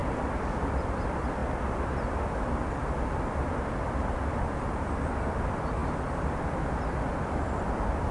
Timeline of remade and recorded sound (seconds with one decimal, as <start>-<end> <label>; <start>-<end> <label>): 0.0-1.4 remade; 1.4-4.4 recorded; 4.4-8.1 remade